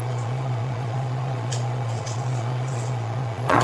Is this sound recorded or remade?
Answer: remade